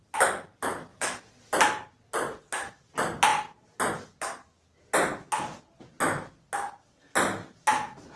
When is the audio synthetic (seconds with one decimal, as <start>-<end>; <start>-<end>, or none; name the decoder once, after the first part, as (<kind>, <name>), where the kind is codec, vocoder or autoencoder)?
none